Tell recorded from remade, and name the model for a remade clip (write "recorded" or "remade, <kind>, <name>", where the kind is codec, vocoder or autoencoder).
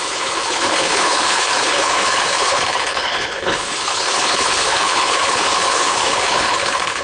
remade, codec, HILCodec